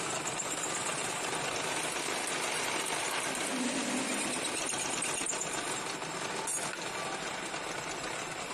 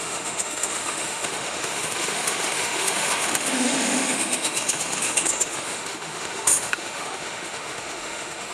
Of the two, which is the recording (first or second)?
first